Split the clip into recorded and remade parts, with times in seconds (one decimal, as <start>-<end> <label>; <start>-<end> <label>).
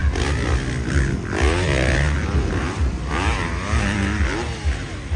0.0-5.2 recorded